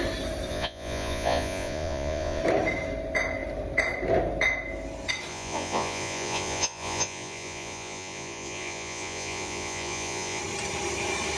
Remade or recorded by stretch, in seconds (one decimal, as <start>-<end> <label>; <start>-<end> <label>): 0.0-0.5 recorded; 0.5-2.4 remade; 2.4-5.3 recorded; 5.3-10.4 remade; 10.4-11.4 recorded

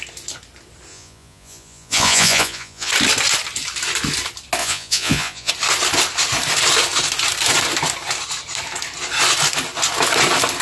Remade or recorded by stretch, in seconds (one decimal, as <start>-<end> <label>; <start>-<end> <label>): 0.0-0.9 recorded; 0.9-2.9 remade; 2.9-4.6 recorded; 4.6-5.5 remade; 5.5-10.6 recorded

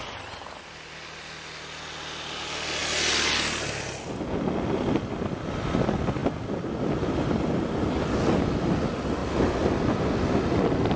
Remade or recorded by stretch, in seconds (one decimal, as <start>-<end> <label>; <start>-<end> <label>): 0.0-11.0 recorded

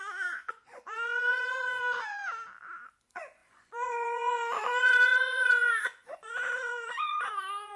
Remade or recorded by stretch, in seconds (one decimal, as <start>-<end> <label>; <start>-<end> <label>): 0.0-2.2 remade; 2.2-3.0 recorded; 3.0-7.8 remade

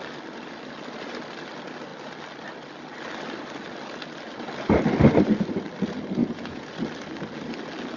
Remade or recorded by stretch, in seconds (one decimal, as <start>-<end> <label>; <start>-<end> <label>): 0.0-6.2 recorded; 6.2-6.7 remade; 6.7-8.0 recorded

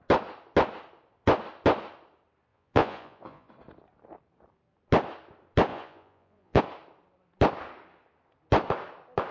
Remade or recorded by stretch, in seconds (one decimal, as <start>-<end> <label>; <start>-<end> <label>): 0.0-2.5 recorded; 2.5-3.5 remade; 3.5-5.7 recorded; 5.7-6.6 remade; 6.6-9.3 recorded